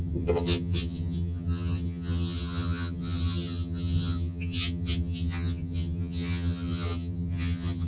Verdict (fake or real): fake